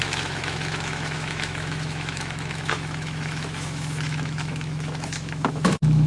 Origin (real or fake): fake